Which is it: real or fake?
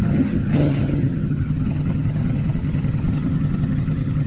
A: fake